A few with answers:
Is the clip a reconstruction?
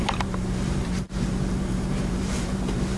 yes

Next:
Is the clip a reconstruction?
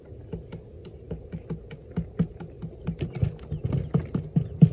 no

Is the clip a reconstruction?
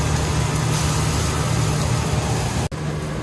no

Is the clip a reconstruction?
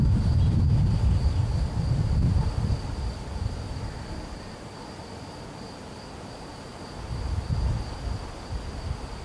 no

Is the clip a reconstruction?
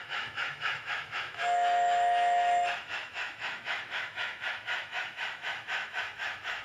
yes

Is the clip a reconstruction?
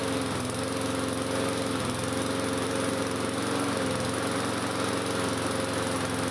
no